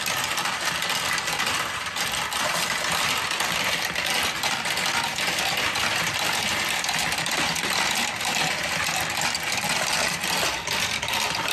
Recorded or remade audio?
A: recorded